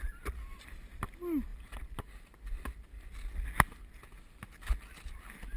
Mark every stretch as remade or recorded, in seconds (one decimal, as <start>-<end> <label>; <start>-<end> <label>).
0.0-5.6 recorded